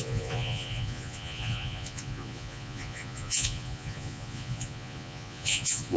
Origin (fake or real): fake